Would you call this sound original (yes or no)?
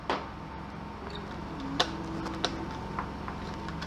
yes